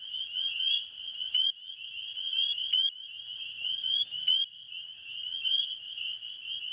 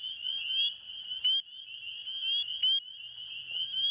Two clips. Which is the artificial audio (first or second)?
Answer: first